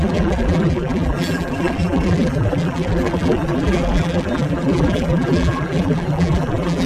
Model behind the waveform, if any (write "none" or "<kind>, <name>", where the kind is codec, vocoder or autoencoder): vocoder, BigVGAN v2